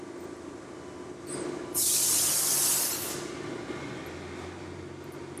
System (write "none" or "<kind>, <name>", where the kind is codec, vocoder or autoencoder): none